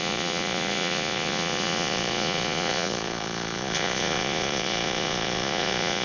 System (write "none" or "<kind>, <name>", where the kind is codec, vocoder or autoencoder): vocoder, Vocos